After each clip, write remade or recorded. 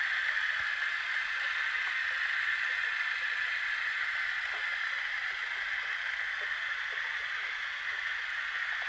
recorded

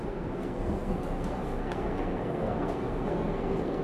remade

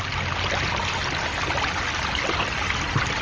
recorded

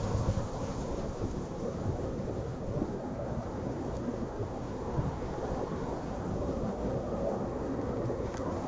remade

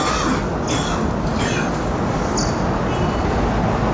recorded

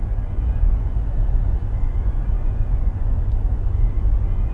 remade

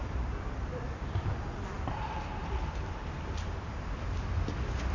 remade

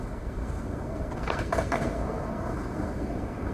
remade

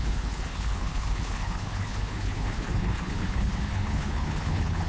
remade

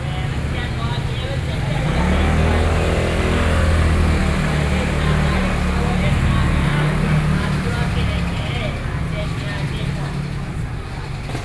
recorded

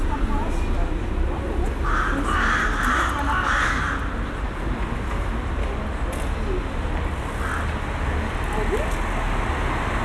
recorded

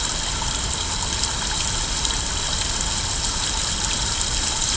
recorded